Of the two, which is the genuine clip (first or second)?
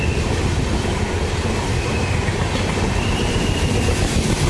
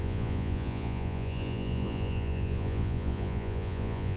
first